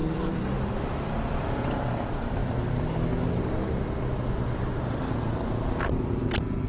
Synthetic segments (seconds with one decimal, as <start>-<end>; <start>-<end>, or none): none